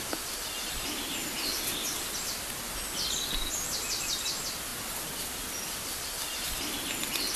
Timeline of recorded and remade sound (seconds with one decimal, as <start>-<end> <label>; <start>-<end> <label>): 0.0-7.4 recorded